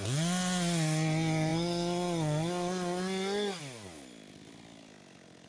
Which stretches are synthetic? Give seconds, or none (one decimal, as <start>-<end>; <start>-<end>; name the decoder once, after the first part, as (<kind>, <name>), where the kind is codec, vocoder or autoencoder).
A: none